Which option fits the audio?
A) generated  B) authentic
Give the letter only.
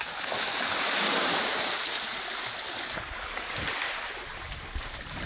B